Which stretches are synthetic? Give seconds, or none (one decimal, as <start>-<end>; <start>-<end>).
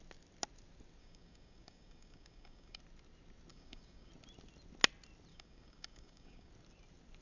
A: 1.0-2.8; 3.5-4.1; 5.3-6.5